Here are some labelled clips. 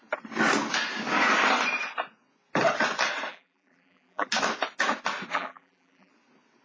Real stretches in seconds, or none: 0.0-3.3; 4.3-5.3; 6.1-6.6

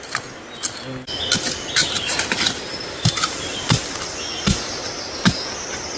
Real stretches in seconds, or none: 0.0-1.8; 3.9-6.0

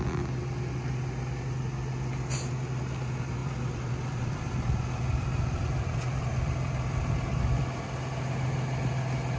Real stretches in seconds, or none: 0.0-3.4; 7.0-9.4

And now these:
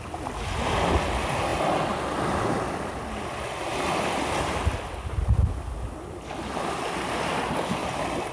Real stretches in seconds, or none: 0.0-7.8

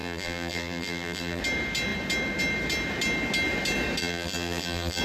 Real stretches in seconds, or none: 1.4-4.0